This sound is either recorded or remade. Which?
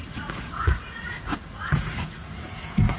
remade